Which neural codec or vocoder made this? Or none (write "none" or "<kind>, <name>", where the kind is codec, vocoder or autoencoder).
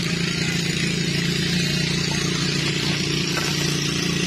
none